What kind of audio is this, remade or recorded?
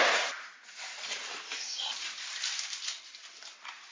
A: recorded